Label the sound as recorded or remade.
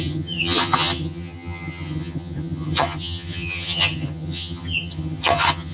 remade